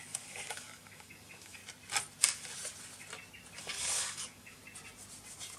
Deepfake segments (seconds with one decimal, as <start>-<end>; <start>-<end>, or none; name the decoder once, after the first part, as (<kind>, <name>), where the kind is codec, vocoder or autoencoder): 0.0-1.6 (codec, DAC); 3.6-4.6